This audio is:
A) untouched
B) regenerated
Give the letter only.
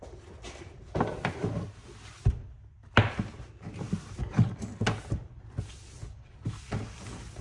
A